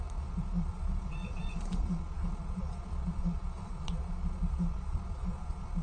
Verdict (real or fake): fake